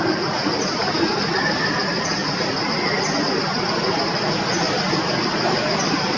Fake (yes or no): no